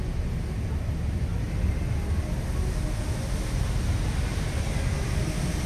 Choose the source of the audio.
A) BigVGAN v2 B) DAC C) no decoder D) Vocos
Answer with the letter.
C